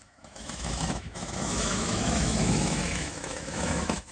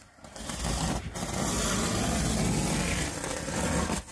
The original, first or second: second